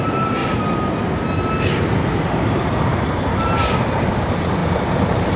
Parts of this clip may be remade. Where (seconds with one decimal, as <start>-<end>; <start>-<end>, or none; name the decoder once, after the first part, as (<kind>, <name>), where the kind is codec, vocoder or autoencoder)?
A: 0.0-0.4 (vocoder, BigVGAN v2); 1.8-5.4